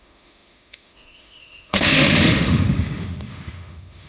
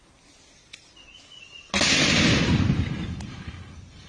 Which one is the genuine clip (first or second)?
second